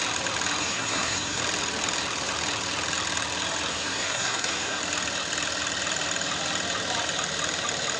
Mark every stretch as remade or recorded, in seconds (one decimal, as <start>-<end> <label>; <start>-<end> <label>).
0.0-0.6 recorded; 0.6-1.4 remade; 1.4-3.7 recorded; 3.7-4.8 remade; 4.8-8.0 recorded